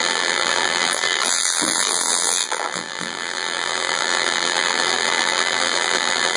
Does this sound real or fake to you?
fake